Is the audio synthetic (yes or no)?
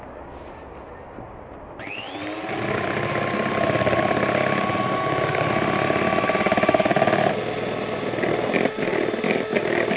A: no